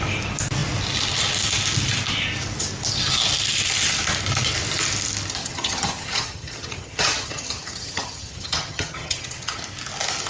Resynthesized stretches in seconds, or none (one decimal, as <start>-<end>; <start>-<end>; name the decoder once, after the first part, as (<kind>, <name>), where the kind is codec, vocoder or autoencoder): 5.4-9.6 (vocoder, HiFi-GAN)